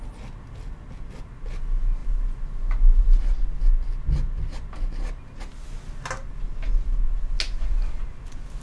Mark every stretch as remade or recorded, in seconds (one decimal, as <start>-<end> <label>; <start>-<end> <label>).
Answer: 0.0-8.6 recorded